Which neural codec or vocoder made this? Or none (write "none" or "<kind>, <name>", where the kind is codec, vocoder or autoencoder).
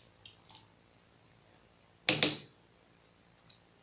none